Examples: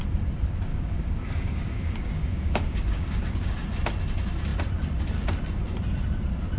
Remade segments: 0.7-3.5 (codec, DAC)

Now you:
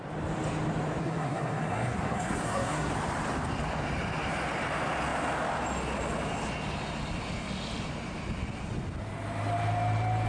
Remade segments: 1.0-2.9 (codec, SNAC)

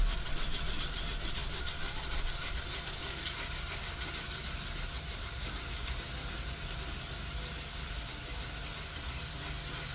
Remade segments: none